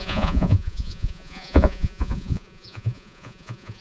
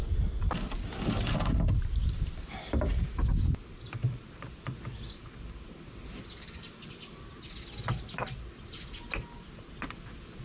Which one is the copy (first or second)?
first